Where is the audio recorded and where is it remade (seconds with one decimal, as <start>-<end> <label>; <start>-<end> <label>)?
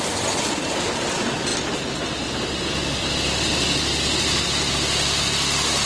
0.0-5.9 recorded